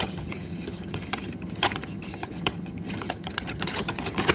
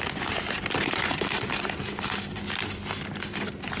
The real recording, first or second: second